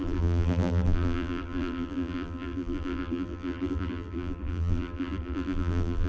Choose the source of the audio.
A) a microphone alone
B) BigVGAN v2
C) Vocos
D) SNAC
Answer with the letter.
B